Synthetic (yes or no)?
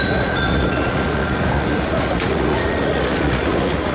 yes